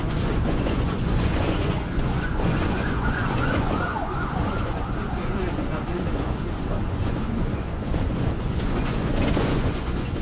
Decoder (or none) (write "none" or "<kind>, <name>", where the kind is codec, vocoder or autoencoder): vocoder, Vocos